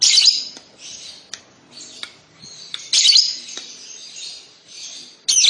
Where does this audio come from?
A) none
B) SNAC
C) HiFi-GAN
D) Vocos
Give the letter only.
A